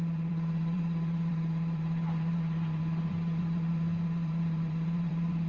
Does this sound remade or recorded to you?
remade